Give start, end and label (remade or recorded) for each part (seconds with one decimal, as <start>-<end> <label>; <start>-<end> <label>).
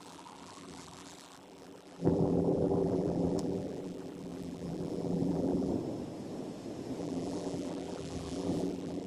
0.0-5.7 remade; 5.7-7.0 recorded; 7.0-9.1 remade